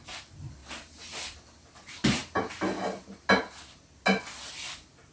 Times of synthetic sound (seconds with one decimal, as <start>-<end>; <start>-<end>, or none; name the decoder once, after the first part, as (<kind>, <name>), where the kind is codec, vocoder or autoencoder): none